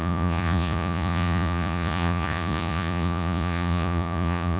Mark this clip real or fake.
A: fake